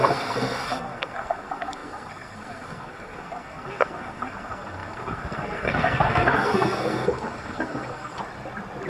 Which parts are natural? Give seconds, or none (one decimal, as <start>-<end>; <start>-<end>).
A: 8.2-8.9